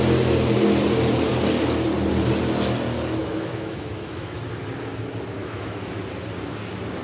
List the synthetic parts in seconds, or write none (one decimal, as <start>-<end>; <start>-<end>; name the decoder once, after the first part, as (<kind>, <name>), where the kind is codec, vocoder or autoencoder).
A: 3.2-4.4 (autoencoder, DAC-VAE); 5.4-6.0